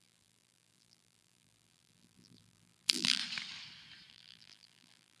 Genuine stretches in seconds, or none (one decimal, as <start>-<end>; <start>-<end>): 3.2-4.1